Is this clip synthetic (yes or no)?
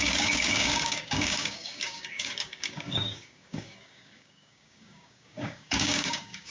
yes